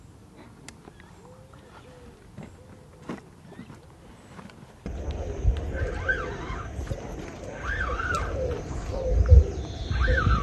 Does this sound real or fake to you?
real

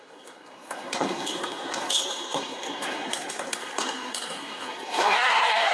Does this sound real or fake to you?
fake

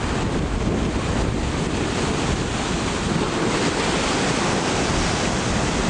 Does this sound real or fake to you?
real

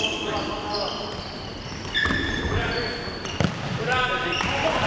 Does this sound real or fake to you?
real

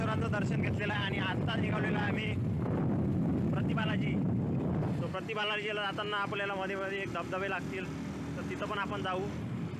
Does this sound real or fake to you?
real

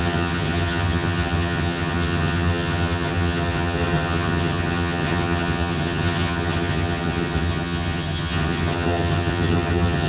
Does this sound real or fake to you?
fake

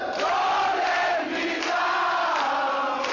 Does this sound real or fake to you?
real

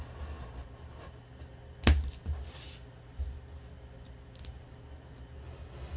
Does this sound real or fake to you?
real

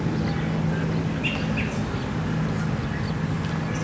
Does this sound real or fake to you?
real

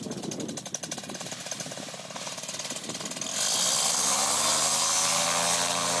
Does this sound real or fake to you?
real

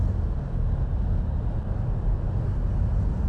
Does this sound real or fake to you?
real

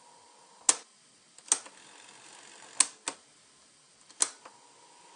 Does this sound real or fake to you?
real